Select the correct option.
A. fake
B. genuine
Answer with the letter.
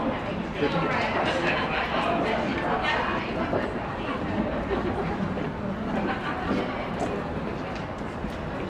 B